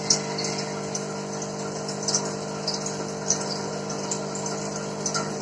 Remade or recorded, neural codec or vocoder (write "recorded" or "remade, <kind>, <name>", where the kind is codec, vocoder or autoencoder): recorded